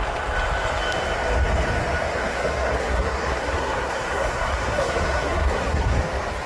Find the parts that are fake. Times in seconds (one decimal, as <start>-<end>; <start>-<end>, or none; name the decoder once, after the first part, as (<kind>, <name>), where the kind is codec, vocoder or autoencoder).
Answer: 2.1-6.0 (codec, SNAC)